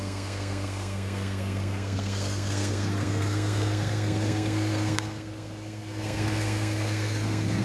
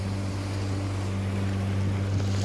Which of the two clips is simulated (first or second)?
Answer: first